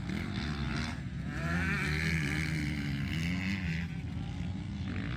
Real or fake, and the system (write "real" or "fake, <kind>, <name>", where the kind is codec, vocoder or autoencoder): real